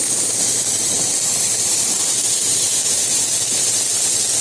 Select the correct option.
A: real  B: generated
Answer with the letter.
B